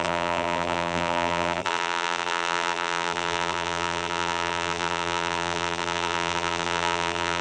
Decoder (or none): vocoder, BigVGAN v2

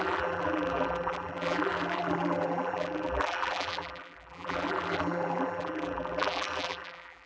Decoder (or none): vocoder, BigVGAN v2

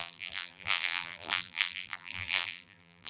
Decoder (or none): vocoder, BigVGAN v2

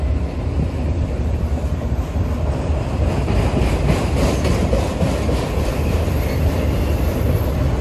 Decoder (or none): vocoder, BigVGAN v2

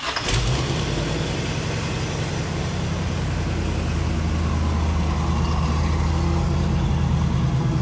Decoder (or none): none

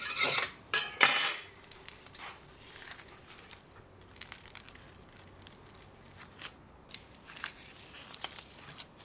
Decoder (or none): vocoder, BigVGAN v2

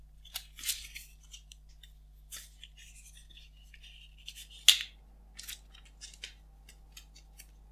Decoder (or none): none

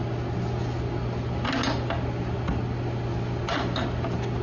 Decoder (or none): none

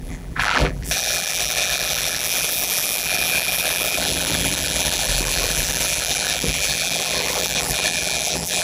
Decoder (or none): vocoder, BigVGAN v2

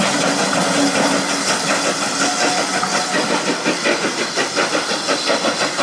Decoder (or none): none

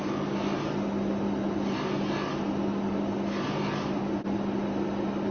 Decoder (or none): none